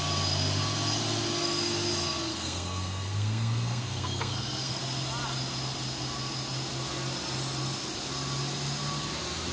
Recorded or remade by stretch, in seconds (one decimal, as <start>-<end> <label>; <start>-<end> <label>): 0.0-2.3 recorded; 2.3-4.8 remade; 4.8-9.5 recorded